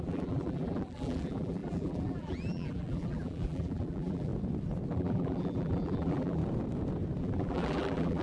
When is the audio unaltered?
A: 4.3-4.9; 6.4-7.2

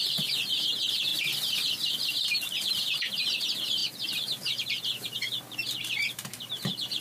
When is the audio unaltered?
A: 1.1-2.1

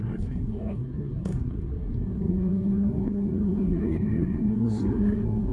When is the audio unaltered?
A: none

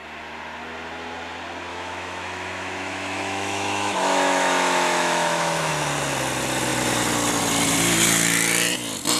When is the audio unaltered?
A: 0.0-1.7; 5.7-9.2

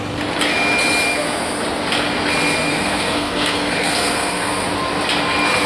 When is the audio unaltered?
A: 0.0-2.7; 4.5-5.7

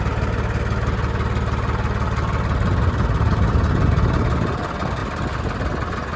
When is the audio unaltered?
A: 0.0-6.2